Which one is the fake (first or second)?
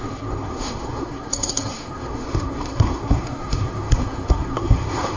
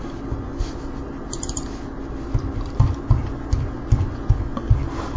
first